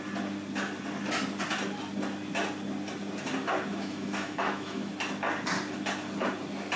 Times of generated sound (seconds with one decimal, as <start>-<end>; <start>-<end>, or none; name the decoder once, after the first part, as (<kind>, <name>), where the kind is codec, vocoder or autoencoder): 3.7-4.9 (autoencoder, DAC-VAE)